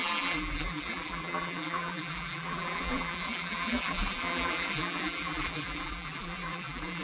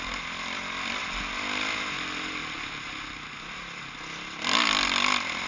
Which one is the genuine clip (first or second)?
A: second